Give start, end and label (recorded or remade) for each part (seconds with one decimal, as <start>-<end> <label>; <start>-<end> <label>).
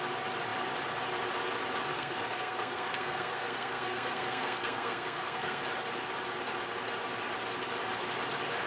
0.0-1.9 recorded; 1.9-5.6 remade; 5.6-8.7 recorded